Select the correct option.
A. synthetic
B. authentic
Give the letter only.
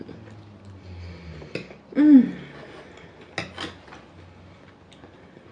B